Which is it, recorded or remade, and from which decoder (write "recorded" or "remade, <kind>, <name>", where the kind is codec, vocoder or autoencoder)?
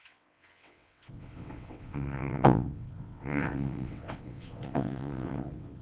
remade, vocoder, WaveNeXt